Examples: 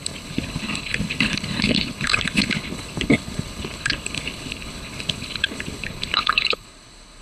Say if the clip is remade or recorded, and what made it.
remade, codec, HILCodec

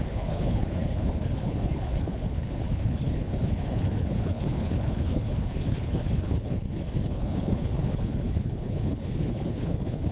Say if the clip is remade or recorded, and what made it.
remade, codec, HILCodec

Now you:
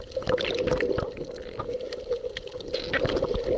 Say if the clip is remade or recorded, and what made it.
recorded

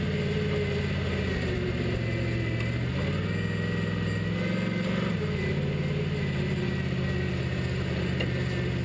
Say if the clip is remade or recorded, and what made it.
recorded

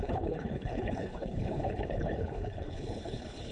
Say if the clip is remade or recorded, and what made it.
remade, codec, HILCodec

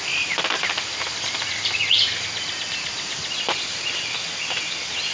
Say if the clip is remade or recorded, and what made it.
recorded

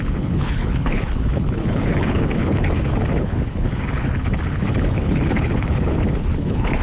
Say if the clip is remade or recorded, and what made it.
remade, codec, HILCodec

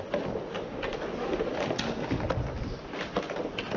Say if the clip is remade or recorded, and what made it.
recorded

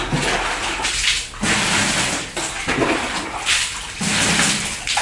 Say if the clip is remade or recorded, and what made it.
recorded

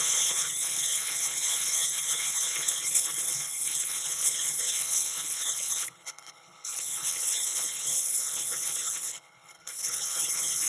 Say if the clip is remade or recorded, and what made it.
remade, codec, HILCodec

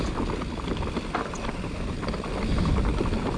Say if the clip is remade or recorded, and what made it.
recorded